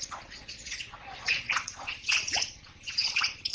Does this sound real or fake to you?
fake